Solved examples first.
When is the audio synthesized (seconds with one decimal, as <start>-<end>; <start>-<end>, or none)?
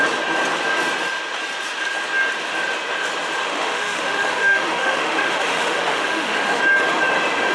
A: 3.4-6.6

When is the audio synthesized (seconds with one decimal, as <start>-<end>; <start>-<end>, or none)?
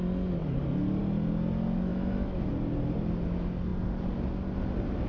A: 1.9-2.5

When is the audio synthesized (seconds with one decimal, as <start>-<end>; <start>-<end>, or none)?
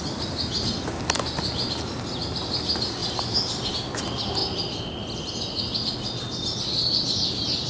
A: none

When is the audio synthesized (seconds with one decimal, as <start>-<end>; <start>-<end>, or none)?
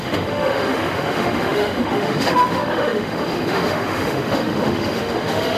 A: 0.0-5.6